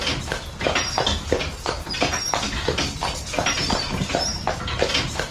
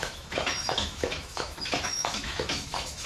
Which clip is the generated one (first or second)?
second